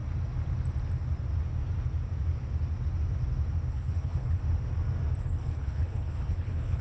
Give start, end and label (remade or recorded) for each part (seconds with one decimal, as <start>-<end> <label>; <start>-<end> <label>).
0.0-3.7 recorded; 3.7-4.4 remade; 4.4-5.2 recorded; 5.2-6.8 remade